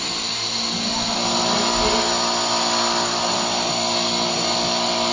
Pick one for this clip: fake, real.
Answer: real